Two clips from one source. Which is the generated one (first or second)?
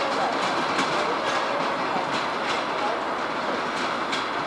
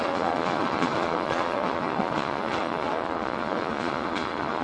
second